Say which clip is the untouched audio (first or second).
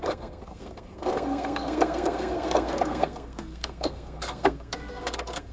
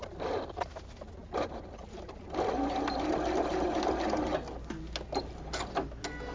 second